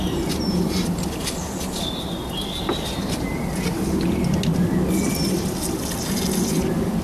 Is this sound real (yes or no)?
yes